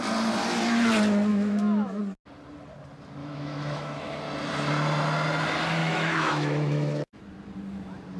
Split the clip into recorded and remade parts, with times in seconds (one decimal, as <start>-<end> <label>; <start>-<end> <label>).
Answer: 0.0-1.3 recorded; 1.3-2.0 remade; 2.0-3.2 recorded; 3.2-4.2 remade; 4.2-5.8 recorded; 5.8-7.2 remade; 7.2-8.2 recorded